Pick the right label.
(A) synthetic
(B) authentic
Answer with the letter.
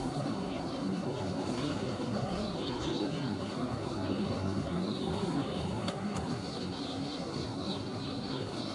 A